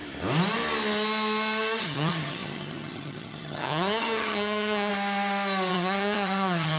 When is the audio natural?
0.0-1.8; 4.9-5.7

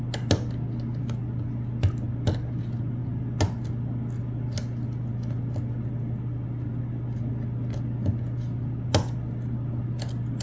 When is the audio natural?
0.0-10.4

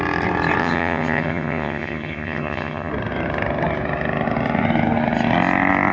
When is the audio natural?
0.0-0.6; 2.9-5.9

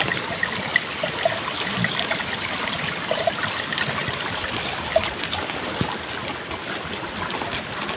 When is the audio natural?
0.0-8.0

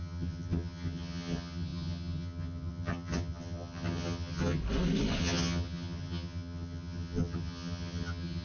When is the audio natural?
4.6-5.2

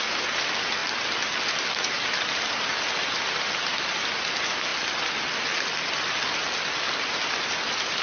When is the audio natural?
0.0-8.0

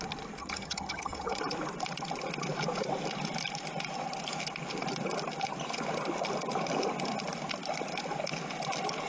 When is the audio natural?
0.0-0.4; 1.4-9.1